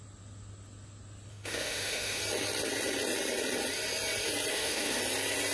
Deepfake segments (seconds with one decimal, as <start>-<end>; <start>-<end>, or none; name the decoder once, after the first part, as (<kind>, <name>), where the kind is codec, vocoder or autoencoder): 1.3-2.2 (autoencoder, DAC-VAE); 4.5-5.0